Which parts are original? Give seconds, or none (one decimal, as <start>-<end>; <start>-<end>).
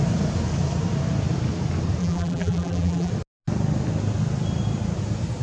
0.0-2.0; 3.1-5.4